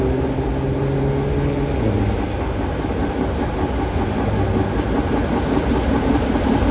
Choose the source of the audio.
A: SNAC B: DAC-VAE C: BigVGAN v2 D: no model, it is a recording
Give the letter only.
D